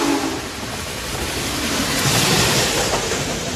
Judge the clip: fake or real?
real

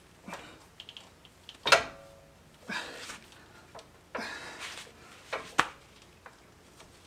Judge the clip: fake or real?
real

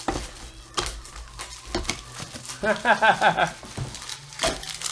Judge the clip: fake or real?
real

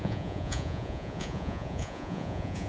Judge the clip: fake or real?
fake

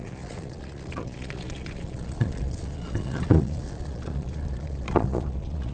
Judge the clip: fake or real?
fake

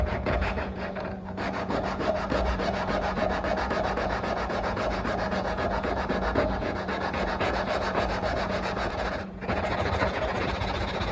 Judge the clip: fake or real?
fake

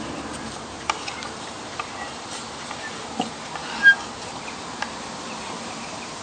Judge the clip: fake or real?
real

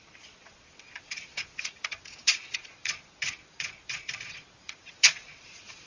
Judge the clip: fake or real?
fake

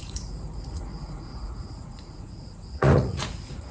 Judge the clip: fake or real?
fake